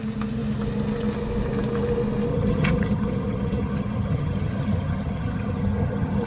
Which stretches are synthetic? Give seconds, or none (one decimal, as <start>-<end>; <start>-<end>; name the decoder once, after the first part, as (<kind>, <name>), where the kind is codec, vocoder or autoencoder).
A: 2.3-6.3 (vocoder, HiFi-GAN)